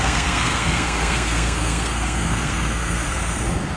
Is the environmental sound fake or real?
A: fake